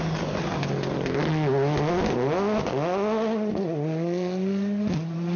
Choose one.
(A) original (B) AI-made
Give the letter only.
A